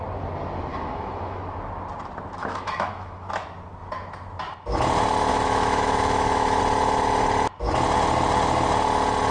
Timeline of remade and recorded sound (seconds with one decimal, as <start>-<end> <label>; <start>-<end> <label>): 0.0-0.7 recorded; 0.7-1.4 remade; 1.4-2.4 recorded; 2.4-3.3 remade; 3.3-5.3 recorded; 5.3-6.6 remade; 6.6-9.3 recorded